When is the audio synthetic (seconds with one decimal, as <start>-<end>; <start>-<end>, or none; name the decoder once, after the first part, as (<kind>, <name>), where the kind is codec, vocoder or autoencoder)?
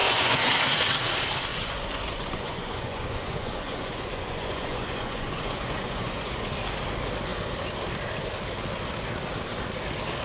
0.0-0.5 (vocoder, Vocos); 1.5-6.5